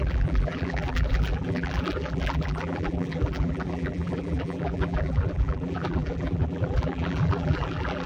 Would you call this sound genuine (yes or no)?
no